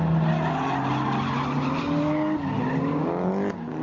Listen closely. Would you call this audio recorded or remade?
recorded